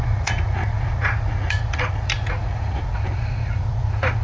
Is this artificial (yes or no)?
yes